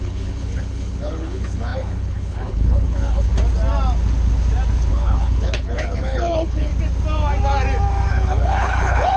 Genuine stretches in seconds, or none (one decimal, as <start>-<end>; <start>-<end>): 3.3-4.9; 6.7-8.1